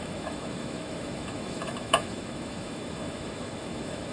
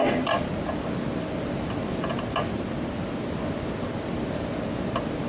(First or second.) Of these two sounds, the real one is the second